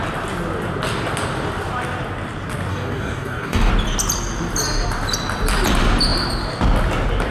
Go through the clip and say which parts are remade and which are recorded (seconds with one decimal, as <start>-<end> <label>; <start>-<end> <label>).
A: 0.0-2.7 recorded; 2.7-3.7 remade; 3.7-7.3 recorded